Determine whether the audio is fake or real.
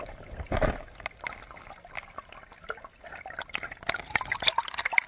real